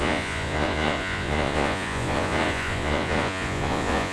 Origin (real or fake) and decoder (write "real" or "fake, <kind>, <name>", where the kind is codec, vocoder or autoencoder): fake, vocoder, Vocos